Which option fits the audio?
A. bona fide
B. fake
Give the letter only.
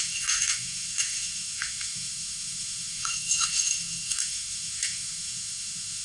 B